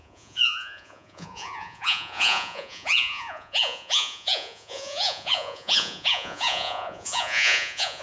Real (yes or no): no